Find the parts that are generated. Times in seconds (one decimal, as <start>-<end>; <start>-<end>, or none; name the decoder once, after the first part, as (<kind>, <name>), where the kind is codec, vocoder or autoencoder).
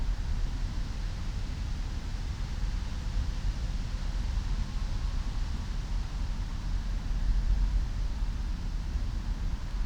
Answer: none